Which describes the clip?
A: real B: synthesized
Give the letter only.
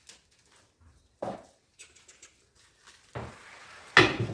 A